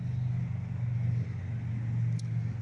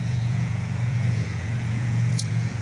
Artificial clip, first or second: second